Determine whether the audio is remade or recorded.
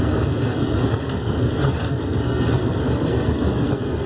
remade